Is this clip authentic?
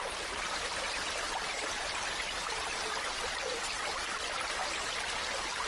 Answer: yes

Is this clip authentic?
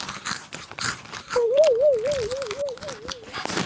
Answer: no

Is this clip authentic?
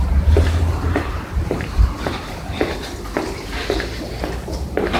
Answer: no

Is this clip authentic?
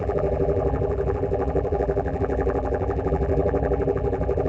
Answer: no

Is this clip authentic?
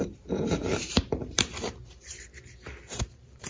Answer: no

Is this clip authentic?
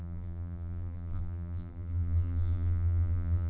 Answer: no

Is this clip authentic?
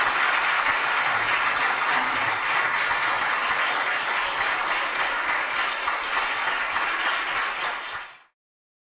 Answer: yes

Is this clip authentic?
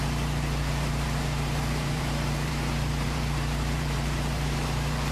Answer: no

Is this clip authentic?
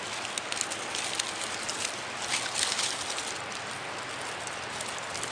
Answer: yes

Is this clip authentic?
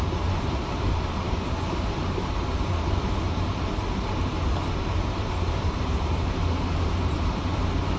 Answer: no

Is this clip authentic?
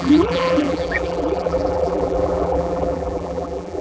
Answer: no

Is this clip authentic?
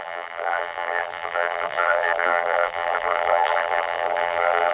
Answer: no